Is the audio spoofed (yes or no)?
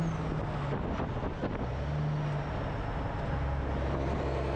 no